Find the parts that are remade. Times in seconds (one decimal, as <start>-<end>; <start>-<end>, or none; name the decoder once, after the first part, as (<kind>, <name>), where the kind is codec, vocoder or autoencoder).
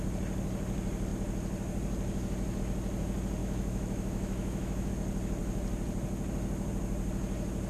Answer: 3.4-4.9 (autoencoder, DAC-VAE)